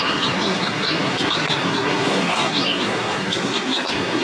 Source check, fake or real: fake